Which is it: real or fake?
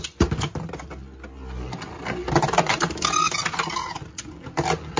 real